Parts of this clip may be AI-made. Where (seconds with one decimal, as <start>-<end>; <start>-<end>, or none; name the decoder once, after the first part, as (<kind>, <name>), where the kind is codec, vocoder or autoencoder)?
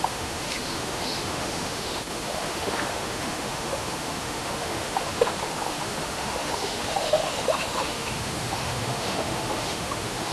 0.0-10.3 (autoencoder, DAC-VAE)